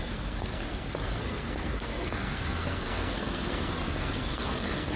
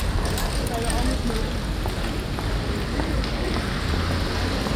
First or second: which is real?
second